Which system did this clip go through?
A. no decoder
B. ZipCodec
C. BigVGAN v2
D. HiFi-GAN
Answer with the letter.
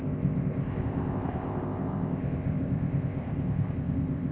B